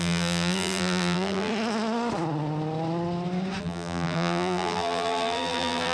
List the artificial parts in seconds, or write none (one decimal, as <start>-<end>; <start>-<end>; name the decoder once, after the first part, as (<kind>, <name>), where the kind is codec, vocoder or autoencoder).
0.0-1.5 (vocoder, BigVGAN v2); 3.6-5.9